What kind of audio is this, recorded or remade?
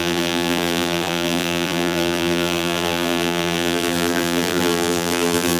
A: remade